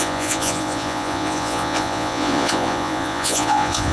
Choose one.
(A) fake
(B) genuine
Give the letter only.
A